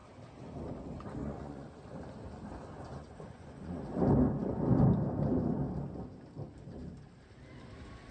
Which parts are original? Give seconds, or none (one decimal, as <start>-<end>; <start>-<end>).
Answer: 0.0-1.2; 1.8-2.9; 3.8-8.1